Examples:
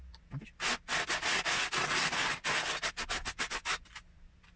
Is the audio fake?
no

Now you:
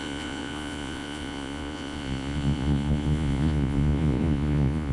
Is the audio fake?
yes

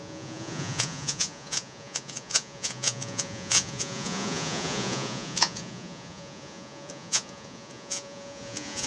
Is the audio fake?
yes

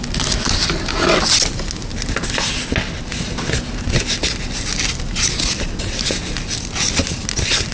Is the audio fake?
no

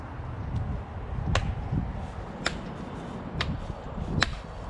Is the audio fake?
no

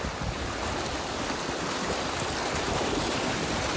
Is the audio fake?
no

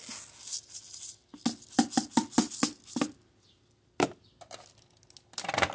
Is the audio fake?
no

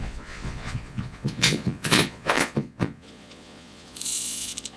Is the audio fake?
yes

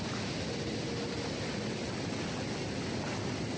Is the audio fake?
no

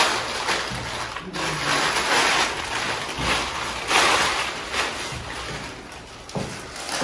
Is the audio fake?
no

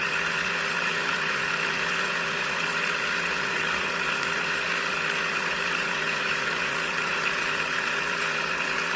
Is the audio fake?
yes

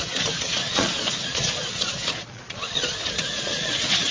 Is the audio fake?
yes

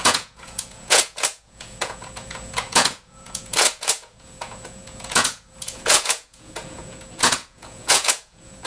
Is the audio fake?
yes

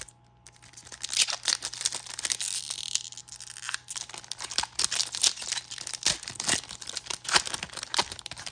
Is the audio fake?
no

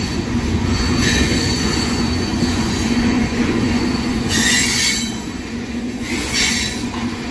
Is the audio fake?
yes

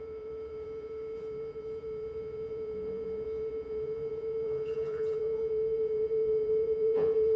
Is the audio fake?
yes